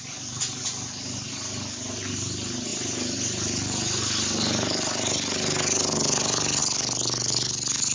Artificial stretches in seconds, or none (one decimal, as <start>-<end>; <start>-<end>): none